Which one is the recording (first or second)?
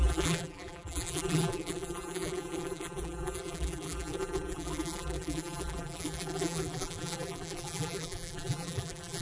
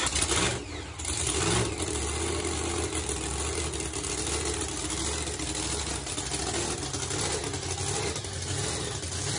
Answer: second